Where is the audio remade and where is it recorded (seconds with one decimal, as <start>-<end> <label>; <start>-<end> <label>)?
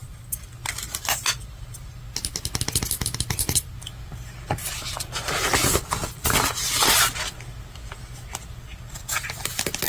0.0-9.9 recorded